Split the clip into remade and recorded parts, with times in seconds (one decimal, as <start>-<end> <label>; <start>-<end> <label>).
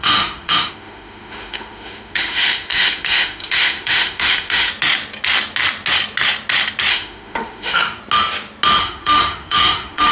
0.0-4.7 remade; 4.7-6.9 recorded; 6.9-8.0 remade; 8.0-8.8 recorded; 8.8-10.1 remade